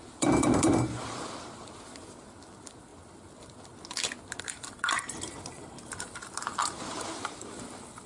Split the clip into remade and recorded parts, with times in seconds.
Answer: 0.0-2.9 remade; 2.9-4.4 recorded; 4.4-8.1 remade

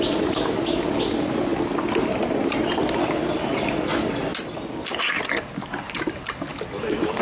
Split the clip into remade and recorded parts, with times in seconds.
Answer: 0.0-1.5 recorded; 1.5-3.1 remade; 3.1-6.5 recorded; 6.5-7.2 remade

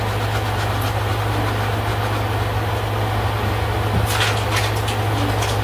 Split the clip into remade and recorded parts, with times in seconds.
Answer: 0.0-5.6 recorded